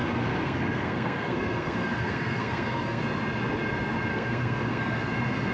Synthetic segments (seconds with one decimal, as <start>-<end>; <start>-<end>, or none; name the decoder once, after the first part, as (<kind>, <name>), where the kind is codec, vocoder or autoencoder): 0.0-3.0 (codec, SNAC); 4.1-5.0